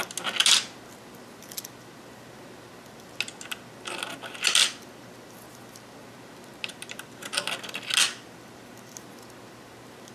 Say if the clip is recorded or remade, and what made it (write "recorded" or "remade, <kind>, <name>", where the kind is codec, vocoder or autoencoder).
recorded